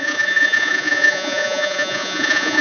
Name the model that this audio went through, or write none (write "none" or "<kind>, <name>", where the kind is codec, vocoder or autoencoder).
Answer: vocoder, Vocos